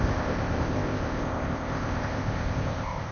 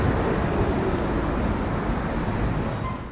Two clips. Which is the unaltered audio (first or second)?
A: second